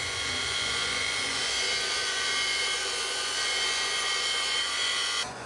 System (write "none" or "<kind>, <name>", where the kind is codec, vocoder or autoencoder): vocoder, Vocos